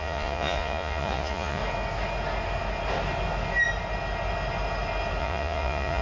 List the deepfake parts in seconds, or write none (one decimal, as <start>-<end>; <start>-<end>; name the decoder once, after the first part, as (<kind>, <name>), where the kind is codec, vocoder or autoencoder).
0.0-1.6 (vocoder, Vocos); 5.2-6.0